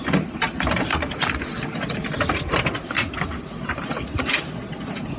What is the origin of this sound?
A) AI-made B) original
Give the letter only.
B